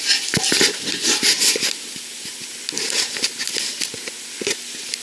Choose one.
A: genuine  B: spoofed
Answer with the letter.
A